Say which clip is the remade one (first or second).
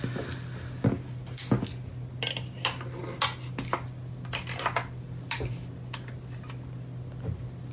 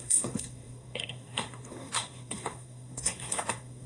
second